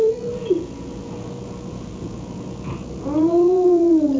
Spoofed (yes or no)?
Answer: yes